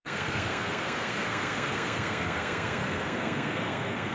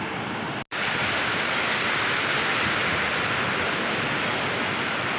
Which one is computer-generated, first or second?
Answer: first